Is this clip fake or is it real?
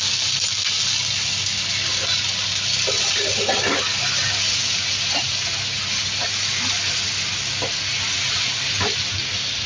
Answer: real